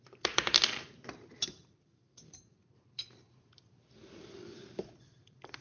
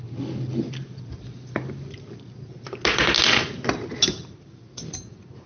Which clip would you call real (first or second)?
second